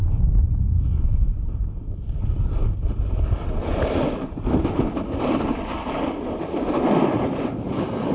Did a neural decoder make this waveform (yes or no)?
no